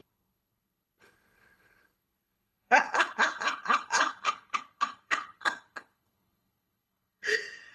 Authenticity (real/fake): fake